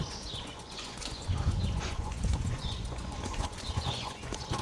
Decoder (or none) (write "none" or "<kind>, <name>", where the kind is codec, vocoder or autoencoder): vocoder, Vocos